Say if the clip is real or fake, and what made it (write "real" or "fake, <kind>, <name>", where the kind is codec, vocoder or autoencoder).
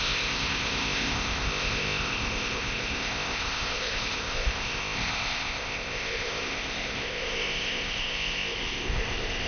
fake, codec, ZipCodec